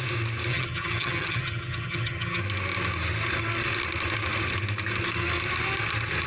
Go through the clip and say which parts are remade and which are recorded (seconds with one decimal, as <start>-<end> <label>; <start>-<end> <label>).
0.0-0.5 recorded; 0.5-2.4 remade; 2.4-6.3 recorded